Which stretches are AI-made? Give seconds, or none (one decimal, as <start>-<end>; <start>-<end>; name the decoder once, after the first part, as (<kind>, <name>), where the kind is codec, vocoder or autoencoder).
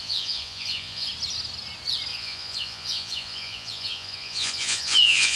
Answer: 0.0-1.1 (vocoder, Vocos); 2.1-5.4